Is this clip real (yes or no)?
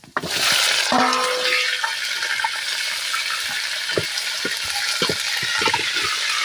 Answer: yes